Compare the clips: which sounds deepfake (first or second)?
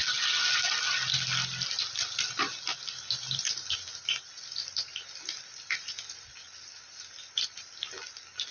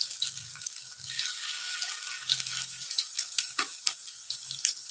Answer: second